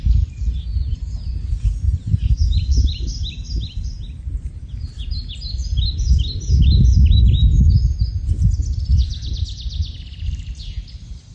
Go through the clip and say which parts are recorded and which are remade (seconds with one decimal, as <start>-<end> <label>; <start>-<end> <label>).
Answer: 0.0-11.3 recorded